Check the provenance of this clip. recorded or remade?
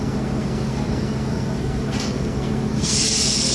remade